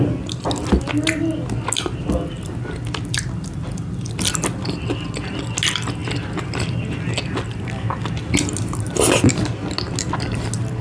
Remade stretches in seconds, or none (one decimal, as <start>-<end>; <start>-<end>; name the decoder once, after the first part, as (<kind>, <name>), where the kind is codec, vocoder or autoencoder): none